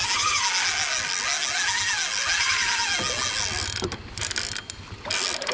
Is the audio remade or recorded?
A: recorded